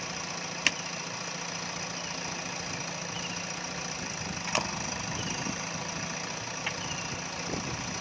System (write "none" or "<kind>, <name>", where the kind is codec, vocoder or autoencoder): none